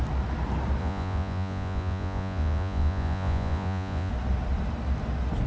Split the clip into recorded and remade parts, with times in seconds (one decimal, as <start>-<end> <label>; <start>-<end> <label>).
0.0-0.8 recorded; 0.8-4.1 remade; 4.1-5.5 recorded